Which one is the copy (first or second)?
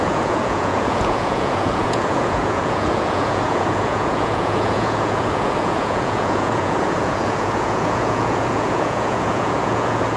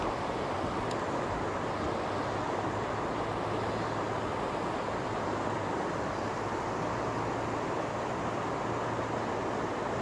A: first